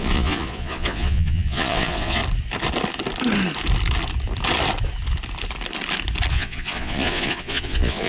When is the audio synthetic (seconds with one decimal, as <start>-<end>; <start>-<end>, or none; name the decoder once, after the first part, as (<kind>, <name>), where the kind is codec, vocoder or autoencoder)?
0.0-2.2 (vocoder, Vocos); 6.3-8.1